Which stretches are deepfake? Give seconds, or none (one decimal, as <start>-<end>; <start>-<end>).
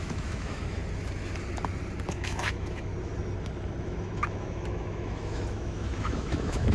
0.0-0.8; 2.1-2.9; 3.8-6.7